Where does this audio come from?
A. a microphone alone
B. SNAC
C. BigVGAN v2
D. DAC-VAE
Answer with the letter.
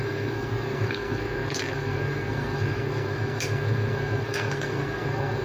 B